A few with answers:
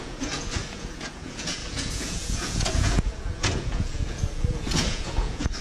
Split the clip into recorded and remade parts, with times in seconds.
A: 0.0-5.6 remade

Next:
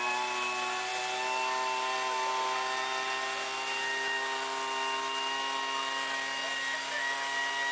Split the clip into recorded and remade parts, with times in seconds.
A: 0.0-7.7 recorded

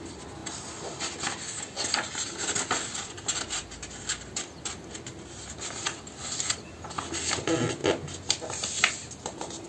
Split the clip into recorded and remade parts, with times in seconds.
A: 0.0-9.7 recorded